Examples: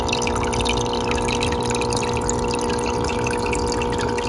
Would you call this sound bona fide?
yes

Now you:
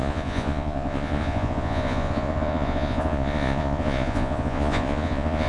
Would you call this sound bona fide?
no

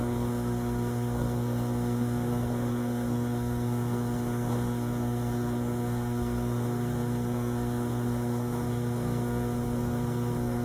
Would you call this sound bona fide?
no